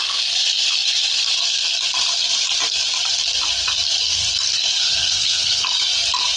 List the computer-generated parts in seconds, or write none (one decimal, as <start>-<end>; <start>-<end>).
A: 4.6-5.8